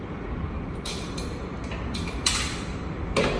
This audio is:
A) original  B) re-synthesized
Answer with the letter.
A